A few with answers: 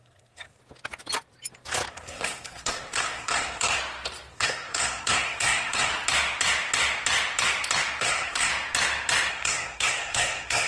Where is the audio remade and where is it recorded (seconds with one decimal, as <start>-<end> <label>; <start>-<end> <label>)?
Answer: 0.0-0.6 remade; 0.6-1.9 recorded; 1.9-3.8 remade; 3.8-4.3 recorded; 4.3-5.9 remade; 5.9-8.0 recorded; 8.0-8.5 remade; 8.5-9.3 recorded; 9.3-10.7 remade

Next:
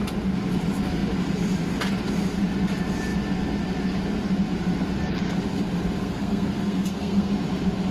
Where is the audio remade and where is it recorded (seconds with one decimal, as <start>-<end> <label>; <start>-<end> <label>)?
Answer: 0.0-6.0 recorded; 6.0-7.3 remade; 7.3-7.9 recorded

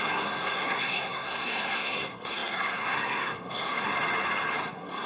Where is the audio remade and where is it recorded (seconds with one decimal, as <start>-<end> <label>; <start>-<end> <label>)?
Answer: 0.0-3.9 remade; 3.9-4.6 recorded; 4.6-5.1 remade

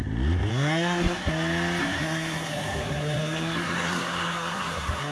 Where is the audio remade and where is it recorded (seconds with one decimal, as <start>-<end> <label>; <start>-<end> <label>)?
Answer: 0.0-0.5 recorded; 0.5-1.3 remade; 1.3-1.8 recorded; 1.8-5.1 remade